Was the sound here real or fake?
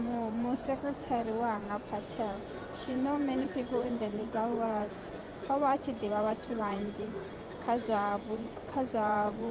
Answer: fake